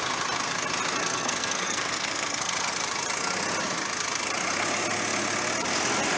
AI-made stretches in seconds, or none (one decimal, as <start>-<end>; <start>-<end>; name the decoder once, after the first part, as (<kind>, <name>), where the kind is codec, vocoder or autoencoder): 1.0-2.7 (codec, SNAC)